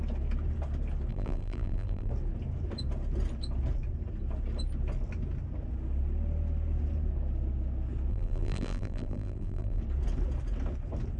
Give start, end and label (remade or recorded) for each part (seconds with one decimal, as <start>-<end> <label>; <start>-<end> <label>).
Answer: 0.0-1.1 recorded; 1.1-2.1 remade; 2.1-8.1 recorded; 8.1-9.8 remade; 9.8-11.2 recorded